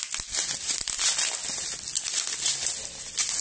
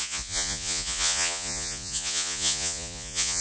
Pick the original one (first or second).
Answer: first